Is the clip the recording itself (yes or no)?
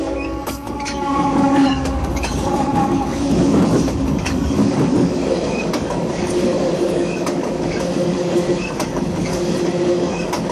no